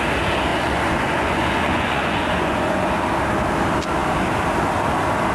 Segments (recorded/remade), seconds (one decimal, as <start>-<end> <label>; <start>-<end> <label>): 0.0-0.5 recorded; 0.5-2.9 remade; 2.9-5.3 recorded